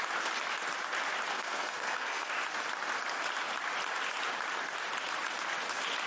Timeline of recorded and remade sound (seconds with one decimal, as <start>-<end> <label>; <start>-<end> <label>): 0.0-1.3 recorded; 1.3-2.3 remade; 2.3-6.1 recorded